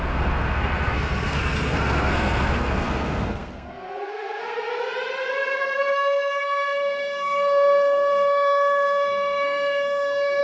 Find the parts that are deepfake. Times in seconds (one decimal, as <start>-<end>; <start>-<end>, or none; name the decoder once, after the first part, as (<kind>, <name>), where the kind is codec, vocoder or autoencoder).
0.0-4.7 (codec, SNAC); 5.3-10.4